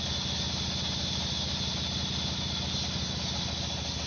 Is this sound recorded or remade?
recorded